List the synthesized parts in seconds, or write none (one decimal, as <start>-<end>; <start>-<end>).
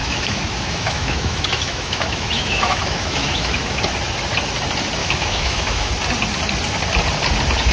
0.0-3.8; 5.0-5.9